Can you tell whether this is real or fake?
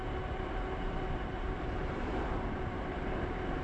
fake